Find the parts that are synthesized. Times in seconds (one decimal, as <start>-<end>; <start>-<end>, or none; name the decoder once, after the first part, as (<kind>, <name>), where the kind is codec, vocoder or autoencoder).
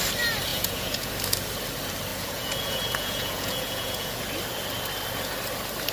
0.5-1.1 (vocoder, Vocos); 2.1-4.2